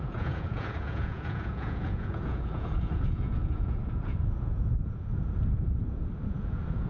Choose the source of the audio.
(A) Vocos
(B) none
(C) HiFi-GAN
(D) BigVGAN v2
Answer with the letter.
A